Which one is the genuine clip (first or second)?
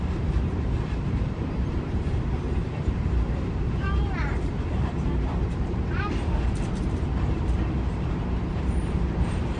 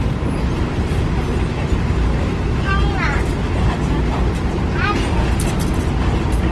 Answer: second